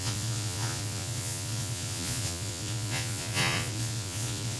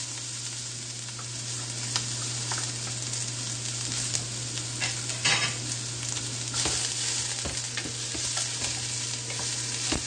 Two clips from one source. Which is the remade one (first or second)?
first